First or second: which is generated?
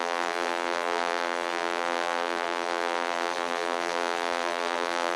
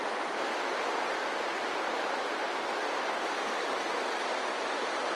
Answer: first